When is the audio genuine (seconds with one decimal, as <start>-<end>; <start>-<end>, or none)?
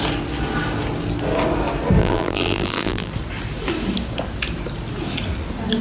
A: 0.0-2.0; 3.1-5.8